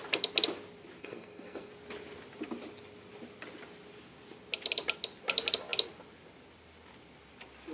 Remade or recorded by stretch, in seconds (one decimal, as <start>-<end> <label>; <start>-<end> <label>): 0.0-1.0 recorded; 1.0-1.7 remade; 1.7-7.7 recorded